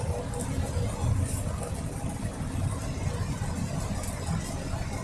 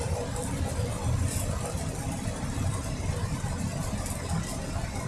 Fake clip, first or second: second